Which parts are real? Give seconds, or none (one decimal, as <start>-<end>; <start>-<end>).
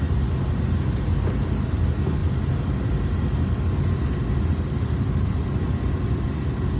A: 0.0-6.8